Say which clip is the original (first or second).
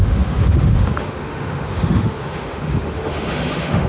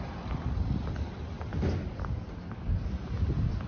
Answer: second